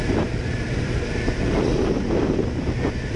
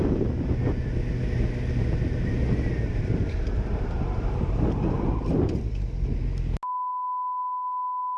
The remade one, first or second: first